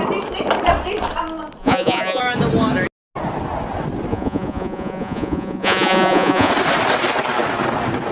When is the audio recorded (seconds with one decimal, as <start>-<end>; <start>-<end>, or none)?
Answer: 0.0-1.6; 2.2-4.1; 6.5-8.1